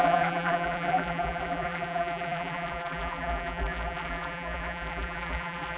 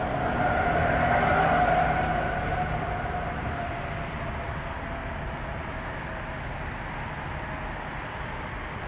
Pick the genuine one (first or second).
second